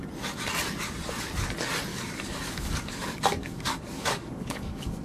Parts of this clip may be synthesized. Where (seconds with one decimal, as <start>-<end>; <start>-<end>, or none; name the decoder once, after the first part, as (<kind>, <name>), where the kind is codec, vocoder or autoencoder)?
1.9-5.0 (codec, DAC)